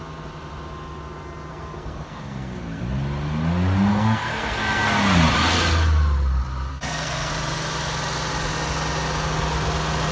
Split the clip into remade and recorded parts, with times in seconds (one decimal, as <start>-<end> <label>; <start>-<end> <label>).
0.0-1.5 recorded; 1.5-2.8 remade; 2.8-3.9 recorded; 3.9-4.9 remade; 4.9-6.7 recorded; 6.7-7.3 remade; 7.3-10.1 recorded